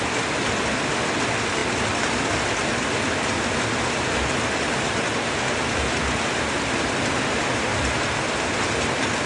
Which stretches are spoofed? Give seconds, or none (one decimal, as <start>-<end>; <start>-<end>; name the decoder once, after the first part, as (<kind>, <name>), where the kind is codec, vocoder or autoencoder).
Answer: none